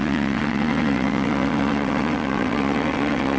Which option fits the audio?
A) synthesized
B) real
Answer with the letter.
A